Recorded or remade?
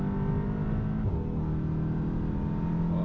recorded